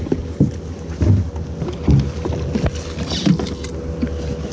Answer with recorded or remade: recorded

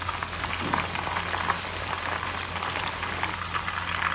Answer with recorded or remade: recorded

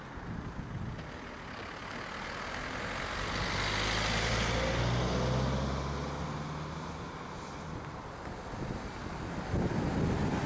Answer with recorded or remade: recorded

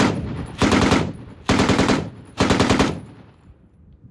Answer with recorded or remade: remade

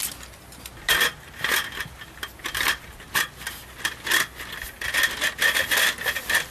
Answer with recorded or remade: recorded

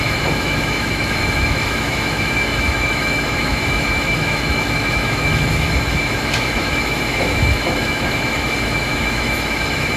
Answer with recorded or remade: remade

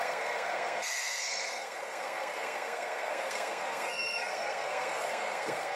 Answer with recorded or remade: remade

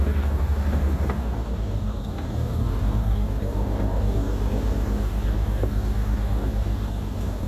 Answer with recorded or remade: remade